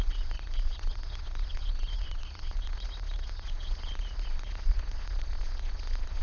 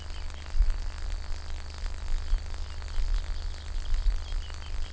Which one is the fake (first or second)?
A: first